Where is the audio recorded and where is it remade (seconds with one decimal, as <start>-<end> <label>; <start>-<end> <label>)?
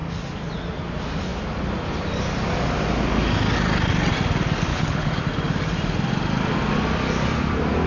0.0-4.7 recorded; 4.7-5.2 remade; 5.2-7.9 recorded